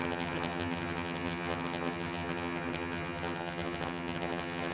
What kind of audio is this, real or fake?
fake